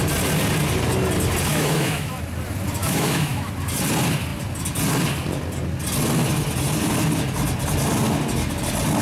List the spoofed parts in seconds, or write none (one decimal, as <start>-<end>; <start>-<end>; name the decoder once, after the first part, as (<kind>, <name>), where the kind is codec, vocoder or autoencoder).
1.5-2.1 (autoencoder, DAC-VAE); 2.8-3.5

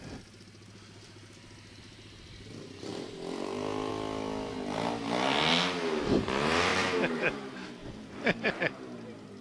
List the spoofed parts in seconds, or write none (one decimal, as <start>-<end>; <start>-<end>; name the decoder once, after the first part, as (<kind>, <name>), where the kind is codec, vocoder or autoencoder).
7.8-8.5 (vocoder, BigVGAN v2)